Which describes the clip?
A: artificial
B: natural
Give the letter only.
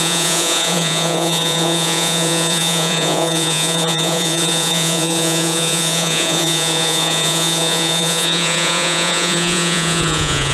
A